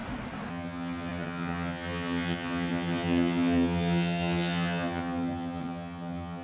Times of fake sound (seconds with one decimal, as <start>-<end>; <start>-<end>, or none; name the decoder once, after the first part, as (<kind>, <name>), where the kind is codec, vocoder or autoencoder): 0.5-6.4 (vocoder, HiFi-GAN)